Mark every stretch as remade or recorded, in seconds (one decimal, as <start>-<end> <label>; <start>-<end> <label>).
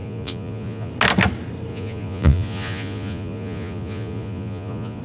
0.0-0.9 remade; 0.9-1.7 recorded; 1.7-5.0 remade